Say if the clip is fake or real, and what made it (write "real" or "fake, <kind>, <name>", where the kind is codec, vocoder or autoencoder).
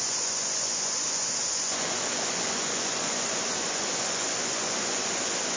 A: fake, vocoder, Vocos